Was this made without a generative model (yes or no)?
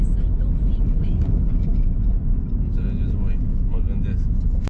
yes